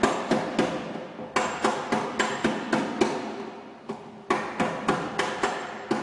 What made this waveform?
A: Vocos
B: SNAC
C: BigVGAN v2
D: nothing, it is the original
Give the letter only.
D